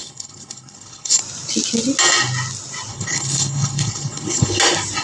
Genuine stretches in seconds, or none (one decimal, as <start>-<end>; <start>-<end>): 1.2-2.9; 4.6-5.0

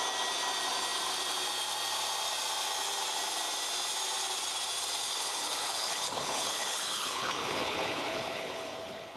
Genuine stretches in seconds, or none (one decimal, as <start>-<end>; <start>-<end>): 0.0-5.1

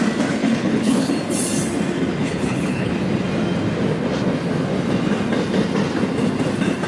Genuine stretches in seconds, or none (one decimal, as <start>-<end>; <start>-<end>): 0.0-0.4; 1.1-2.2; 2.9-6.9

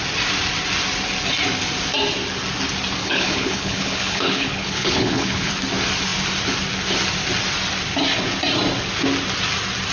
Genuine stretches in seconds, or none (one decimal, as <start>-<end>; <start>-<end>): 0.0-3.0; 5.5-9.9

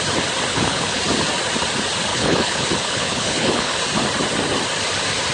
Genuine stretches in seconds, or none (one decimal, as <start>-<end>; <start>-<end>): 0.0-0.5; 1.0-2.1; 3.8-5.3

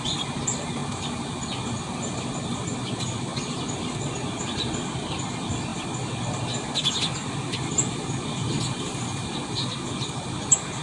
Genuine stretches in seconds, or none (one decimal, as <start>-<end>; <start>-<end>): 0.0-10.8

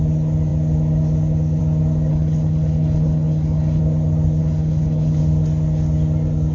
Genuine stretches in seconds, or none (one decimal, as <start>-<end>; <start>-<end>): 0.0-2.1; 3.8-4.4; 5.2-6.5

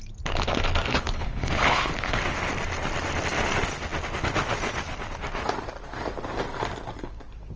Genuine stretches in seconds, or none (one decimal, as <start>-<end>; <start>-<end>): 0.0-0.9; 2.2-7.6